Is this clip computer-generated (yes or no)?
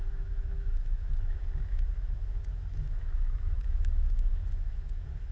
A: yes